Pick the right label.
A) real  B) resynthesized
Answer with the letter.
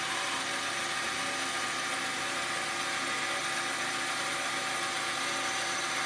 A